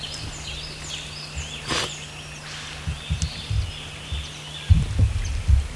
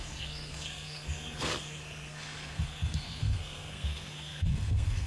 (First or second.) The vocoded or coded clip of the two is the second